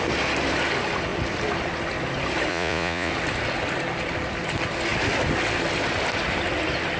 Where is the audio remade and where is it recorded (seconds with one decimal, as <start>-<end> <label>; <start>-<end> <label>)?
0.0-2.5 recorded; 2.5-3.1 remade; 3.1-7.0 recorded